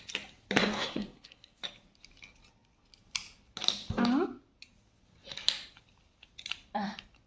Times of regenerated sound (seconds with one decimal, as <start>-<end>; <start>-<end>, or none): 0.6-1.6